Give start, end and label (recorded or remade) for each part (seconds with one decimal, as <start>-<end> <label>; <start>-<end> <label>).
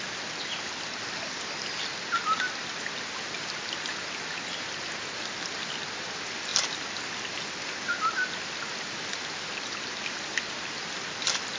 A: 0.0-11.6 recorded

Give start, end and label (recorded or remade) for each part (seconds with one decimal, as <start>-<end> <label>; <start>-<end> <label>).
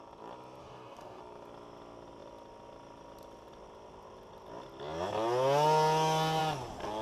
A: 0.0-0.6 recorded; 0.6-1.2 remade; 1.2-7.0 recorded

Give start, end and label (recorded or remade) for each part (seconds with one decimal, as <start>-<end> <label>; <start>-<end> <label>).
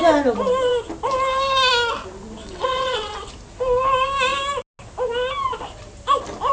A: 0.0-2.4 recorded; 2.4-3.3 remade; 3.3-6.5 recorded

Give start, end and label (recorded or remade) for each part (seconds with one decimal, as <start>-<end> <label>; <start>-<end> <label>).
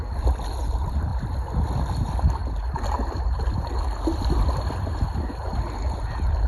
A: 0.0-6.5 remade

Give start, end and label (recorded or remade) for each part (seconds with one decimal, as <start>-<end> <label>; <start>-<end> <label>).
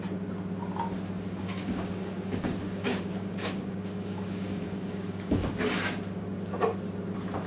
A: 0.0-1.4 recorded; 1.4-5.5 remade; 5.5-7.5 recorded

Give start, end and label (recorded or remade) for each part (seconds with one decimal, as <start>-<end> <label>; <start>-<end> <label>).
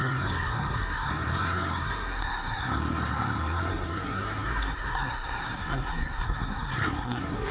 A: 0.0-7.5 remade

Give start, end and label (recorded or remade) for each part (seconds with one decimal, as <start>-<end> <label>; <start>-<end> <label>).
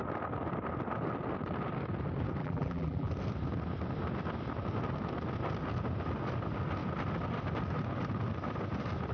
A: 0.0-2.4 recorded; 2.4-3.1 remade; 3.1-9.1 recorded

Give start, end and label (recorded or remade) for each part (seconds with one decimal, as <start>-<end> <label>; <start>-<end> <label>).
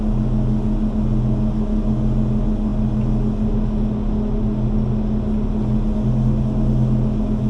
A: 0.0-7.5 recorded